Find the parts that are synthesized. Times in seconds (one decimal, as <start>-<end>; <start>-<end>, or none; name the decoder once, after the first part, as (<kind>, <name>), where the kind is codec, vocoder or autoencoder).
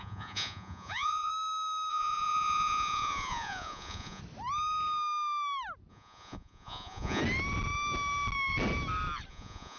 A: 0.0-1.3 (vocoder, Vocos); 1.9-4.2; 5.9-7.2; 9.3-9.8